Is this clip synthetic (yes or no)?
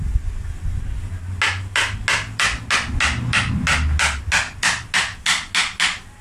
no